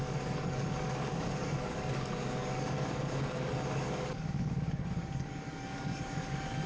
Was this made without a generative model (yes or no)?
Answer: no